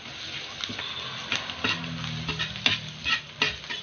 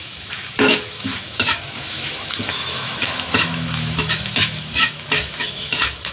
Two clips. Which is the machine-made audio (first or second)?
second